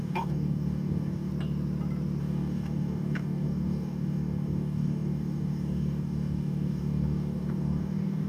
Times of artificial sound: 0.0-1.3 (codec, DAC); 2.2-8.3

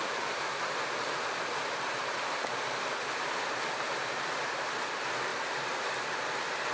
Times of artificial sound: 5.3-5.9 (vocoder, BigVGAN v2)

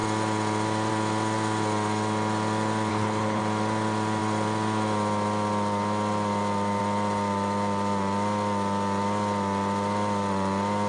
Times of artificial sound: 2.9-3.4 (codec, HILCodec)

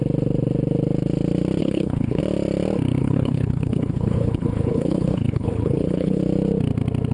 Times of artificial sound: 1.6-2.2 (codec, HILCodec); 3.0-6.2

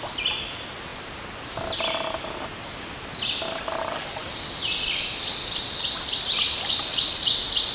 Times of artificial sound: none

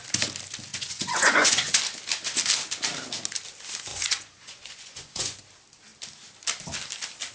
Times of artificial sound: 0.7-1.8 (vocoder, Vocos); 3.9-5.4

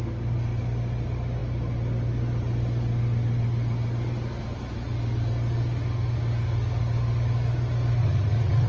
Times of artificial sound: 8.0-8.7 (vocoder, Vocos)